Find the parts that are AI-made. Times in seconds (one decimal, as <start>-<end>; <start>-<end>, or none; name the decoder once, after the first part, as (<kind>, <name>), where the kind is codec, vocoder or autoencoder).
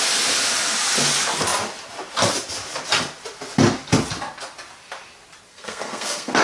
5.5-6.4 (codec, SNAC)